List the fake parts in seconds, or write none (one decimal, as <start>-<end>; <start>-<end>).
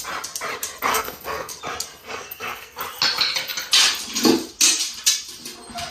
0.9-1.6; 2.0-2.8